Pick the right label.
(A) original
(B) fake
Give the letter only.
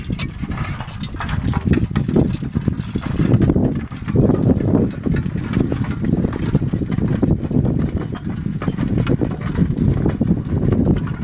A